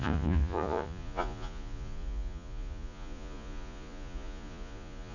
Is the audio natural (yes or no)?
no